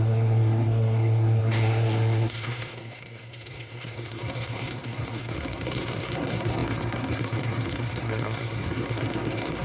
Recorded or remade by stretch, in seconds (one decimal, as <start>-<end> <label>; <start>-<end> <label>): 0.0-9.6 remade